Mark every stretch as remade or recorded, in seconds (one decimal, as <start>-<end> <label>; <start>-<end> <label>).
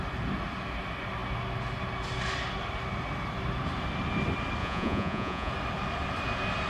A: 0.0-4.6 recorded; 4.6-5.5 remade; 5.5-6.7 recorded